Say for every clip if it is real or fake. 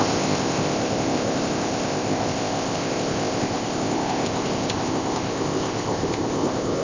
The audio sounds fake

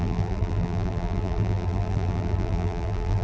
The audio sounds fake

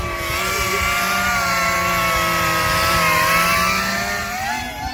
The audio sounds real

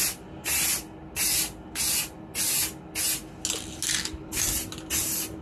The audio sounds real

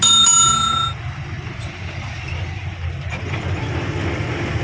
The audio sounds real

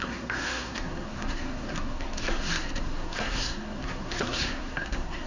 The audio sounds fake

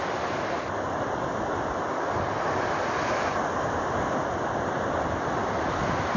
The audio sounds real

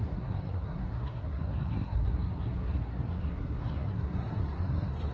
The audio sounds fake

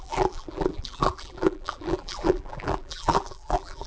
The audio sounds fake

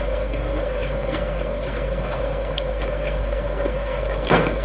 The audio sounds fake